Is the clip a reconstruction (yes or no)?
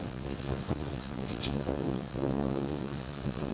yes